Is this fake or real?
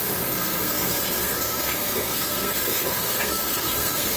fake